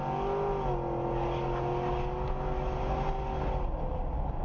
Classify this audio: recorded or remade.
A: recorded